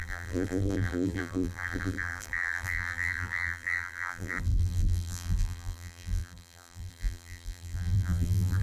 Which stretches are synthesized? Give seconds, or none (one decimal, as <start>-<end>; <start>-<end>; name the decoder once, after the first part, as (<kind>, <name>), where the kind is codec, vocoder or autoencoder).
0.0-8.6 (vocoder, BigVGAN v2)